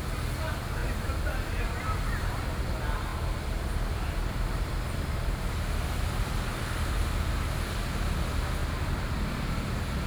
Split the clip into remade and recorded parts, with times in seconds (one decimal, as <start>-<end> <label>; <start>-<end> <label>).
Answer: 0.0-0.8 recorded; 0.8-2.6 remade; 2.6-3.1 recorded; 3.1-6.4 remade; 6.4-8.6 recorded; 8.6-9.3 remade; 9.3-10.1 recorded